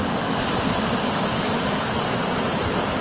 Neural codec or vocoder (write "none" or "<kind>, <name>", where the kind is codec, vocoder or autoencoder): none